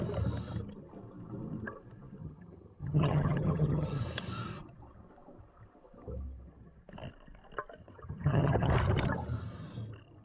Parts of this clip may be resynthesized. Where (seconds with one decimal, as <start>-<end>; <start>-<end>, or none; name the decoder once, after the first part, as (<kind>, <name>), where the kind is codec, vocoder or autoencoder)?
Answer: 2.2-4.0 (vocoder, HiFi-GAN); 7.8-8.7